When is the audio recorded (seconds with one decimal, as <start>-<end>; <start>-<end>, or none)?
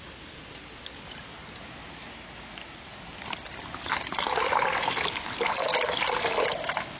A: 0.0-7.0